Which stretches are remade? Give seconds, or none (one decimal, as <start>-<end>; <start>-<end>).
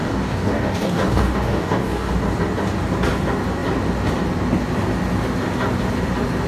0.0-2.1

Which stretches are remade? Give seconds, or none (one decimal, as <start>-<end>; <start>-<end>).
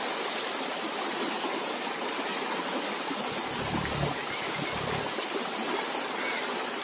none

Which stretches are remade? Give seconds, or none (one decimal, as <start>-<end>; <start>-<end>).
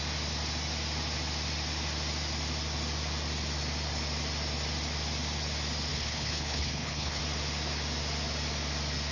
5.9-7.2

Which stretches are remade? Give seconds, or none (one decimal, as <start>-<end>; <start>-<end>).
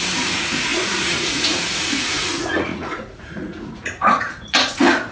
0.0-5.1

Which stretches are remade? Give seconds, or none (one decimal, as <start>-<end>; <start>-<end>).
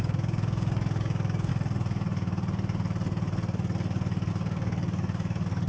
0.0-1.5; 4.3-5.7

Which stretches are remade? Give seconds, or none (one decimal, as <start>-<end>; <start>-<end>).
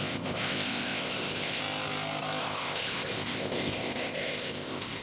0.0-1.6; 2.4-5.0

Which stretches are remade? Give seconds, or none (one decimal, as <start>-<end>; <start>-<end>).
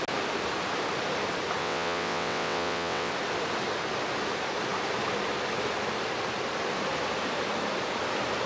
1.6-3.1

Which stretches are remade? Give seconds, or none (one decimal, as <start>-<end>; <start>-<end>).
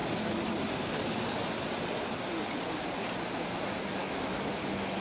4.0-5.0